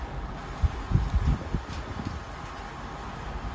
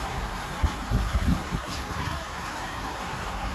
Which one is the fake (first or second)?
second